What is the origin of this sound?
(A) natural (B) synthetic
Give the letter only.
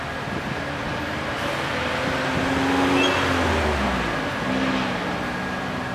A